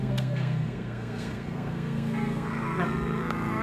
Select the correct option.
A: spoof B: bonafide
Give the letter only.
A